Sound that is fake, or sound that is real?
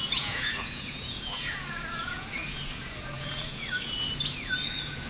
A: fake